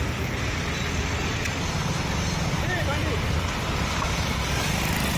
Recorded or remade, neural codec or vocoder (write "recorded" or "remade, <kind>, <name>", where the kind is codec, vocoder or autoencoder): recorded